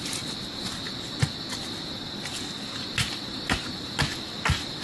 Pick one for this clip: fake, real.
real